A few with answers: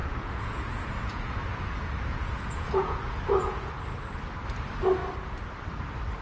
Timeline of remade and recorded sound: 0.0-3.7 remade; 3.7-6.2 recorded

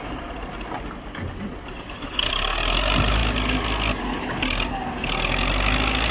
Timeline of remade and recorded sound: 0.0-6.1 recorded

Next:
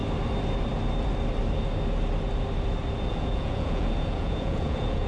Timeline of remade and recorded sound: 0.0-3.1 recorded; 3.1-5.1 remade

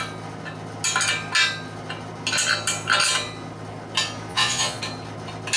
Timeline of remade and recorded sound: 0.0-4.3 recorded; 4.3-4.8 remade; 4.8-5.6 recorded

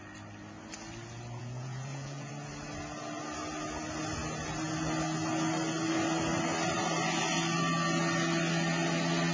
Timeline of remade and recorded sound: 0.0-1.4 recorded; 1.4-2.3 remade; 2.3-9.3 recorded

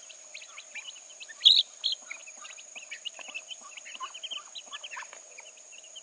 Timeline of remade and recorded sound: 0.0-6.0 recorded

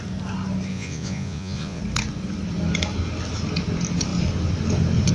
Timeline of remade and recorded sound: 0.0-0.7 recorded; 0.7-1.8 remade; 1.8-5.1 recorded

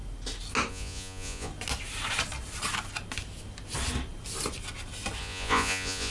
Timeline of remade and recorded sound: 0.0-0.7 recorded; 0.7-1.5 remade; 1.5-5.2 recorded; 5.2-6.1 remade